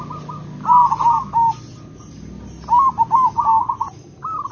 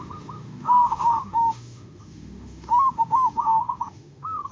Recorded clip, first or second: first